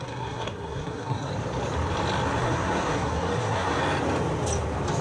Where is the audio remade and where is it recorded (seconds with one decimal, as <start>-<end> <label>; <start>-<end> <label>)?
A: 0.0-1.3 remade; 1.3-2.4 recorded; 2.4-3.8 remade; 3.8-5.0 recorded